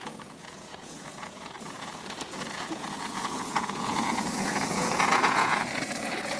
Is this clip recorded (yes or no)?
no